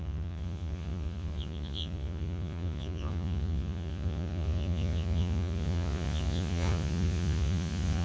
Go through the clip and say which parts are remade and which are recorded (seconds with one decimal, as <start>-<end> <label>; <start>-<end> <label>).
0.0-8.0 remade